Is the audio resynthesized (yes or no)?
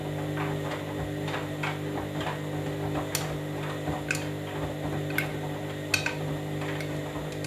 no